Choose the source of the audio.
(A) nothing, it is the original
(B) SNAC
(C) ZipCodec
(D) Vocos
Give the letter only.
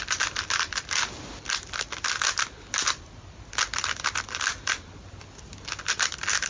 A